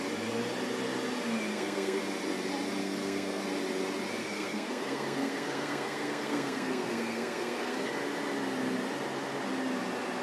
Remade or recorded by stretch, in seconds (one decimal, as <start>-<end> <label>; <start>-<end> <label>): 0.0-1.5 recorded; 1.5-2.0 remade; 2.0-2.8 recorded; 2.8-3.4 remade; 3.4-4.2 recorded; 4.2-7.9 remade; 7.9-10.2 recorded